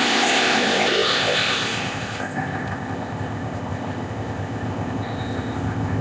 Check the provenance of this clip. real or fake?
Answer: fake